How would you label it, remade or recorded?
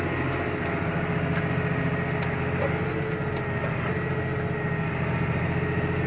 recorded